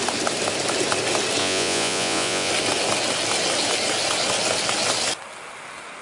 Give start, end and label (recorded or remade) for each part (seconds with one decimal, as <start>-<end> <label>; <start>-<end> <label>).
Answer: 0.0-1.4 recorded; 1.4-2.5 remade; 2.5-6.0 recorded

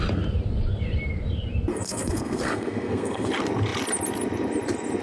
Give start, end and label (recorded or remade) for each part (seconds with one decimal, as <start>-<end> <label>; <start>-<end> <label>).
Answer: 0.0-1.7 recorded; 1.7-3.3 remade; 3.3-5.0 recorded

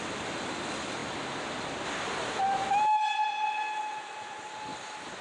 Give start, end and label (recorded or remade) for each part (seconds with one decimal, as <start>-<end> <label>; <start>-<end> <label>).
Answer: 0.0-5.2 recorded

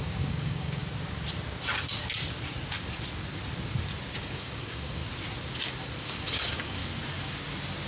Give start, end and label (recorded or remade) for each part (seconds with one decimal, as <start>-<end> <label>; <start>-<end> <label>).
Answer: 0.0-0.8 remade; 0.8-4.1 recorded; 4.1-5.0 remade; 5.0-6.0 recorded; 6.0-6.8 remade; 6.8-7.9 recorded

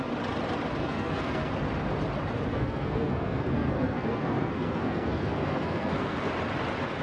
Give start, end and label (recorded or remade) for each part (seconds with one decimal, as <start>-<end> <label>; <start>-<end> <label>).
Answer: 0.0-0.8 recorded; 0.8-1.5 remade; 1.5-2.5 recorded; 2.5-6.3 remade; 6.3-7.0 recorded

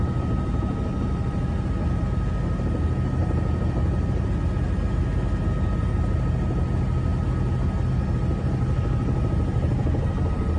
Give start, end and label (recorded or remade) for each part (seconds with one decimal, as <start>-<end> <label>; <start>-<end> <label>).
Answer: 0.0-10.6 recorded

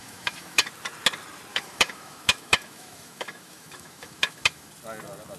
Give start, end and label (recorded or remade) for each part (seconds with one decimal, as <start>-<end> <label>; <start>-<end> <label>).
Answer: 0.0-0.7 remade; 0.7-1.5 recorded; 1.5-4.7 remade; 4.7-5.4 recorded

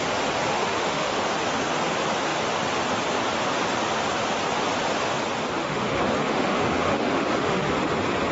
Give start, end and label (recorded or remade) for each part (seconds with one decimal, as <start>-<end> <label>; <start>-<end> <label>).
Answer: 0.0-0.5 recorded; 0.5-1.2 remade; 1.2-5.6 recorded; 5.6-7.7 remade; 7.7-8.3 recorded